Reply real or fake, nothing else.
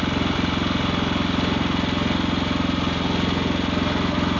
real